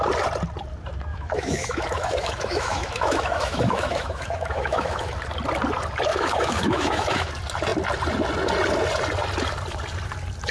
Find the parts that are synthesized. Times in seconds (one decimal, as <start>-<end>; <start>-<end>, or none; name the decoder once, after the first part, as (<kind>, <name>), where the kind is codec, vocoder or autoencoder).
1.1-5.1 (autoencoder, DAC-VAE); 6.1-7.3